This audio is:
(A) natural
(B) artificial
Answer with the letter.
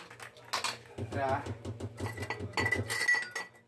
A